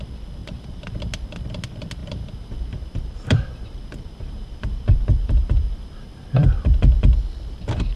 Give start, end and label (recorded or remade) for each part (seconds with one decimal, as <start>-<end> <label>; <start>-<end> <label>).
0.0-0.4 recorded; 0.4-1.0 remade; 1.0-2.0 recorded; 2.0-6.8 remade; 6.8-8.0 recorded